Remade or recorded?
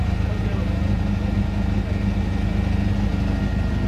recorded